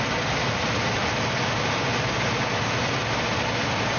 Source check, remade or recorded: recorded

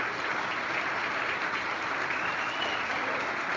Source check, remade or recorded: recorded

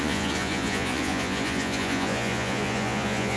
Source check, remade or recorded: remade